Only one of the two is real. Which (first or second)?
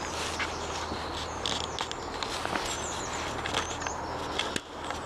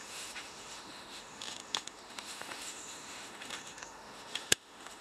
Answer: first